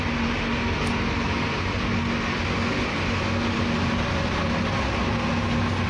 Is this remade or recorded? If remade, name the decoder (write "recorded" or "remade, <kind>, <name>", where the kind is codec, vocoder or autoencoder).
recorded